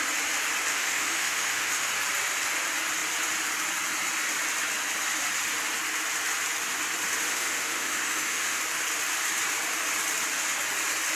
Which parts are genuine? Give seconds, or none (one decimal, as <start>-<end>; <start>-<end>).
0.0-0.7; 1.9-7.3; 8.6-11.2